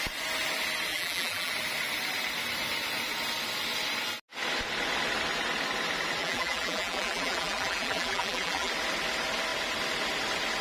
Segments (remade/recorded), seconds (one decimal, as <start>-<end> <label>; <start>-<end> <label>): 0.0-0.9 recorded; 0.9-1.5 remade; 1.5-6.2 recorded; 6.2-8.7 remade; 8.7-10.6 recorded